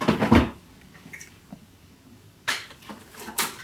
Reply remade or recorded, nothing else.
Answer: remade